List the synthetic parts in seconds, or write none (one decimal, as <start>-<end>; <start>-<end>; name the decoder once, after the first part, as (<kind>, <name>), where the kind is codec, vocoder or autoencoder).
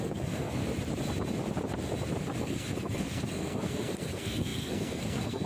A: 0.0-0.6 (codec, SNAC); 2.4-5.5